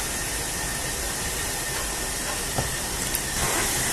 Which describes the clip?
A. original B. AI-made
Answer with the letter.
A